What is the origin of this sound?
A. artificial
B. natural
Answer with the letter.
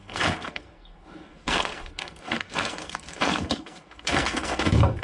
A